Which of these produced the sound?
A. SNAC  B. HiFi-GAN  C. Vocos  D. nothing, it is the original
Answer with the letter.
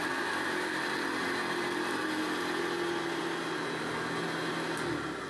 D